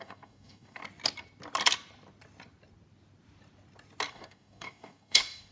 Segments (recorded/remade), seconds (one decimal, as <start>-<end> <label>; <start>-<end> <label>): 0.0-0.8 remade; 0.8-4.1 recorded; 4.1-5.5 remade